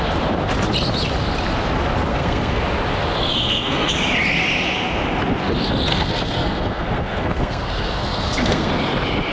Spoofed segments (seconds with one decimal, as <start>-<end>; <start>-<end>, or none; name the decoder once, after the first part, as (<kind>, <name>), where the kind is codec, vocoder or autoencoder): 2.1-2.6 (codec, SNAC); 3.2-3.9; 5.9-8.7